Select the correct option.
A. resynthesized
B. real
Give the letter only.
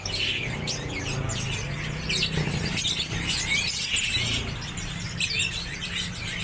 B